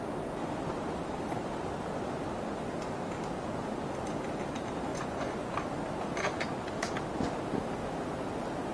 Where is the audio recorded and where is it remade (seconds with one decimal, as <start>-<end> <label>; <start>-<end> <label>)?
0.0-4.9 recorded; 4.9-5.5 remade; 5.5-8.7 recorded